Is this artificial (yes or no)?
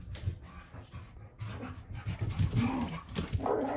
no